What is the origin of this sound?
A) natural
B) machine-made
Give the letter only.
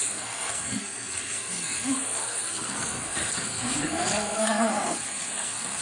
B